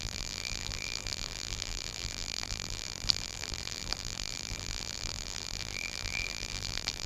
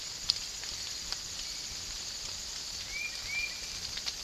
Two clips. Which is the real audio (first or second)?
second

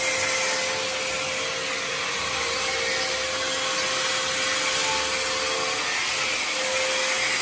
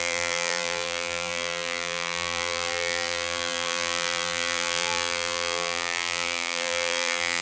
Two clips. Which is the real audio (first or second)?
first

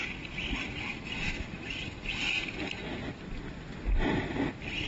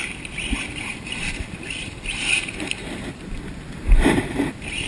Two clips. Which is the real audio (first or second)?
first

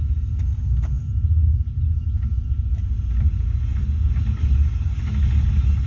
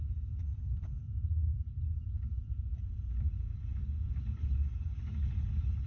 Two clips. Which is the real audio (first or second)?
first